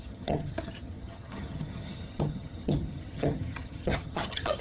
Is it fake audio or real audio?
fake